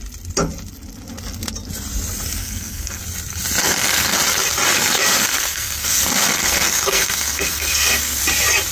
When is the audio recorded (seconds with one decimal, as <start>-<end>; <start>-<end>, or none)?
0.0-2.4; 3.0-3.6; 4.2-4.8; 8.2-8.7